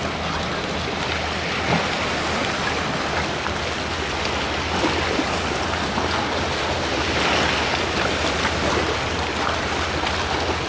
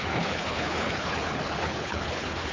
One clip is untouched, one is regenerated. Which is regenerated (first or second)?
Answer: second